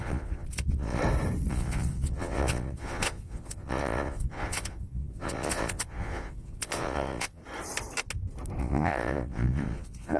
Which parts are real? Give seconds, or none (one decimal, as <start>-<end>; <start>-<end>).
1.0-1.5; 7.4-8.6